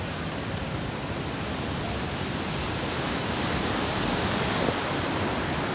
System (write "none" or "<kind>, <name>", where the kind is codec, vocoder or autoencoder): none